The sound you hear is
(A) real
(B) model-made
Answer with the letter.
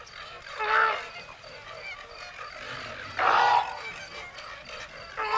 A